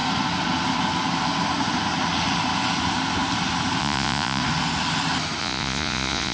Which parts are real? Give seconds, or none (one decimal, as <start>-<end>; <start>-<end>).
0.0-3.8; 4.4-5.4